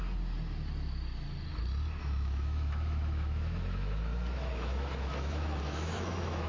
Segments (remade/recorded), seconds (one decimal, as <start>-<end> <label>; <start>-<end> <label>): 0.0-2.0 recorded; 2.0-6.5 remade